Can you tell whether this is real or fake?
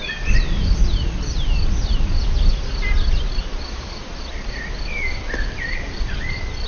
real